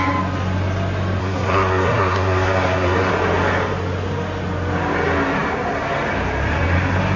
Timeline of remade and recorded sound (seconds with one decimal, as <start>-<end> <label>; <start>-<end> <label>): 0.0-1.2 recorded; 1.2-3.1 remade; 3.1-7.2 recorded